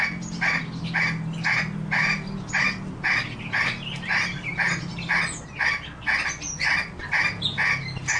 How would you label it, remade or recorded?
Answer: recorded